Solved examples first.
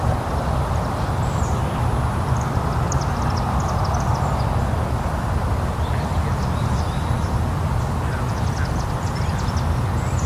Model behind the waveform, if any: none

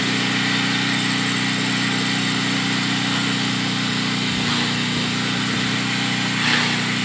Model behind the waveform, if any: none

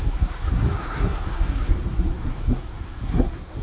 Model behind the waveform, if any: codec, SNAC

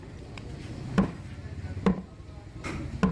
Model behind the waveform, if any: none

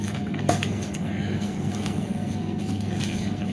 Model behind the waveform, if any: codec, SNAC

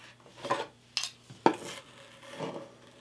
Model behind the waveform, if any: none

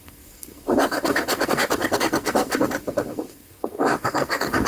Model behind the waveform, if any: codec, SNAC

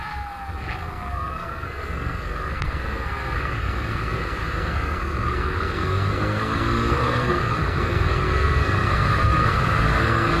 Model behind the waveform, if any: codec, SNAC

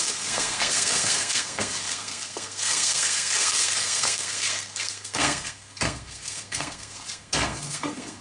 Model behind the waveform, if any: codec, SNAC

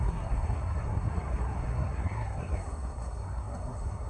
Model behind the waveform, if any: codec, SNAC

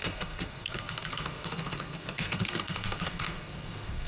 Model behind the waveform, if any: codec, SNAC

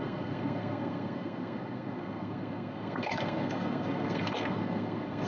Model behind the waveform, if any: codec, SNAC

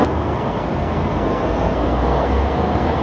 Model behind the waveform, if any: codec, SNAC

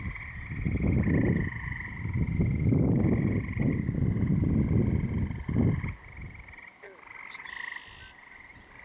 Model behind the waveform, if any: none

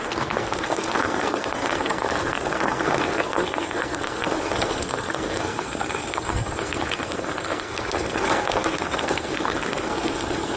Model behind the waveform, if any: codec, SNAC